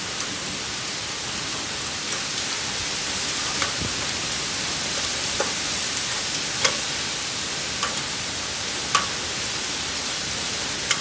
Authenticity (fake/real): real